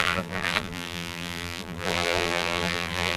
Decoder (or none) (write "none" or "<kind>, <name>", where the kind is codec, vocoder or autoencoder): vocoder, BigVGAN v2